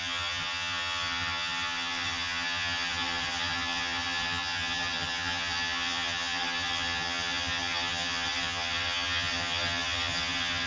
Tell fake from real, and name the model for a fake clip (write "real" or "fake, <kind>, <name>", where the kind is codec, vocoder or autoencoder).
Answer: fake, vocoder, HiFi-GAN